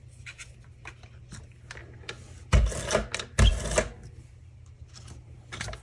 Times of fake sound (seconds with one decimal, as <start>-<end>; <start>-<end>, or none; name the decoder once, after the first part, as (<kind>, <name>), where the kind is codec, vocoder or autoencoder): none